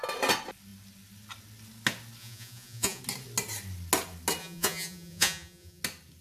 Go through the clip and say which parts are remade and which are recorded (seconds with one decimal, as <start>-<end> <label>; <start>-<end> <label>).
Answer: 0.0-2.2 recorded; 2.2-3.0 remade; 3.0-4.4 recorded; 4.4-5.8 remade; 5.8-6.2 recorded